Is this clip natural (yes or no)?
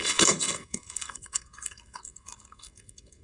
no